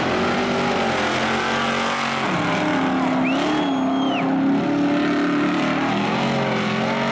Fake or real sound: real